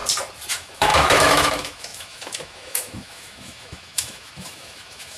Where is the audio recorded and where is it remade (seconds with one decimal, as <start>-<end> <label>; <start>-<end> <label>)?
0.0-0.5 recorded; 0.5-5.2 remade